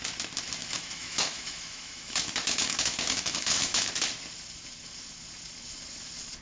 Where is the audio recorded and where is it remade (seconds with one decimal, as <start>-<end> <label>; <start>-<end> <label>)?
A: 0.0-0.6 recorded; 0.6-3.9 remade; 3.9-6.4 recorded